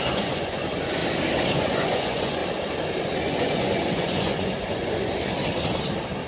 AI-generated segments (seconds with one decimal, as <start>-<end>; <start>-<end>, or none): 0.0-1.0; 1.5-2.4; 3.0-5.1